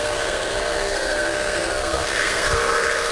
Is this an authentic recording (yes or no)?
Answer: no